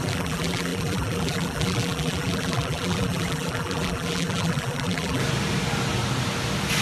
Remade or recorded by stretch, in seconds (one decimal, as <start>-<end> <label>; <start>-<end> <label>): 0.0-5.2 remade; 5.2-6.8 recorded